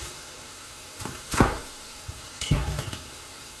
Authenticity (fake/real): fake